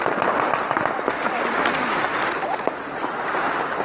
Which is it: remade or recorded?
recorded